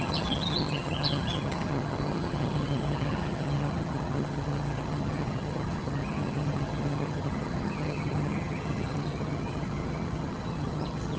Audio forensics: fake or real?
fake